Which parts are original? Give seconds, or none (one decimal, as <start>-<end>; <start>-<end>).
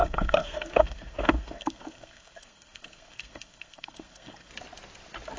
4.5-5.4